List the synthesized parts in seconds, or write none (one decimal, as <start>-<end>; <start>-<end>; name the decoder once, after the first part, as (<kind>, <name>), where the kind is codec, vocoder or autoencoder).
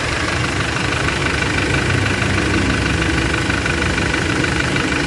0.0-1.2 (vocoder, BigVGAN v2); 4.3-5.1